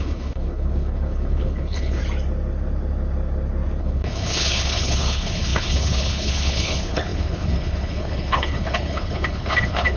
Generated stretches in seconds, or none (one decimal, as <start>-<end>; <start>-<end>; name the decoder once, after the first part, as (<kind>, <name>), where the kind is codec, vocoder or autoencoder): 0.0-2.0 (codec, HILCodec); 3.8-10.0